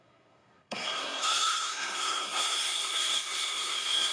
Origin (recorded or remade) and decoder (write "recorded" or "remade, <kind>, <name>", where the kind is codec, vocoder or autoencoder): remade, codec, SNAC